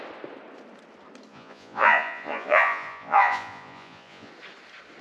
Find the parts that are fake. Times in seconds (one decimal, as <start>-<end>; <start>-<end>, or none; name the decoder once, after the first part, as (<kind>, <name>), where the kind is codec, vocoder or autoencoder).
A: 1.3-4.3 (vocoder, Vocos)